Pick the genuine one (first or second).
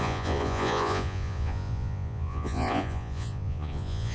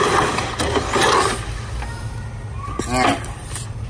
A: second